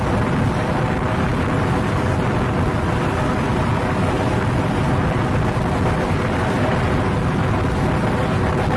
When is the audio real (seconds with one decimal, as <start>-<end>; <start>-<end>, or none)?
0.0-8.8